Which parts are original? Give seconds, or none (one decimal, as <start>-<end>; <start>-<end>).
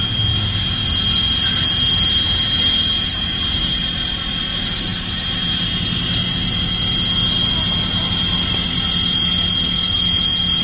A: 0.0-3.1; 3.8-10.6